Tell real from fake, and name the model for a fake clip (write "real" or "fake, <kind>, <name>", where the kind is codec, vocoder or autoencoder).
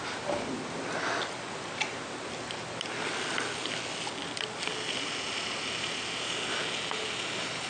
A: real